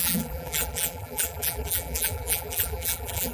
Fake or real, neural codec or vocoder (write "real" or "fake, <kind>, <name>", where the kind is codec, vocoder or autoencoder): fake, vocoder, BigVGAN v2